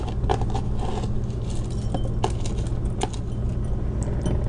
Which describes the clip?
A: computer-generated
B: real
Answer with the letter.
B